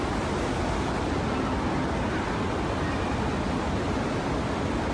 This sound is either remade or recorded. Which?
recorded